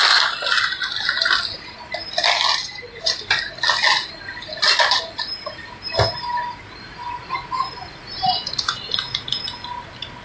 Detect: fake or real real